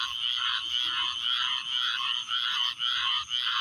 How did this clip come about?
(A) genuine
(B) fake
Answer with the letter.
A